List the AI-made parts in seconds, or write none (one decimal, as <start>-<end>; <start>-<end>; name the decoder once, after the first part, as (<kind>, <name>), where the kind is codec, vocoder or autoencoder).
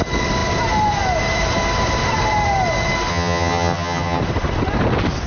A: 3.1-4.2 (vocoder, HiFi-GAN)